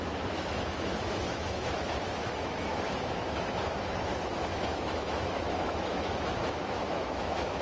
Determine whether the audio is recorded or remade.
remade